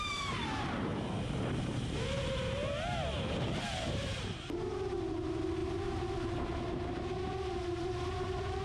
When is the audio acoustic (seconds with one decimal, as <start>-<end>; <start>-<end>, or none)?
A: 0.9-1.6